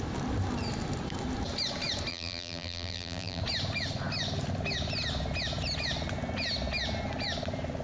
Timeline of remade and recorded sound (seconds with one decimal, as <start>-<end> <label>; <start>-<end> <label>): 0.0-2.1 recorded; 2.1-3.4 remade; 3.4-7.8 recorded